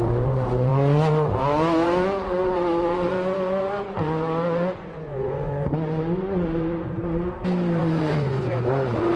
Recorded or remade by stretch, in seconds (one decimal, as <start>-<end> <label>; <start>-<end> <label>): 0.0-7.0 remade; 7.0-7.8 recorded; 7.8-9.2 remade